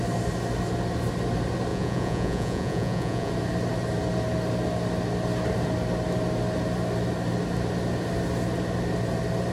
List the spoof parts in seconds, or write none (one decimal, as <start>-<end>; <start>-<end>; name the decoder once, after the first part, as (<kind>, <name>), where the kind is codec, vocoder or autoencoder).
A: 1.7-3.3 (vocoder, Vocos)